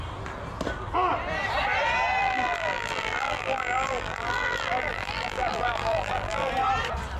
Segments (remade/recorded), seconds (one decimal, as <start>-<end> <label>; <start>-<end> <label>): 0.0-2.2 recorded; 2.2-6.5 remade; 6.5-7.2 recorded